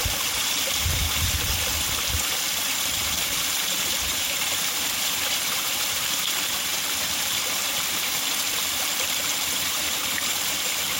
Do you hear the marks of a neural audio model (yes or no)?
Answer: yes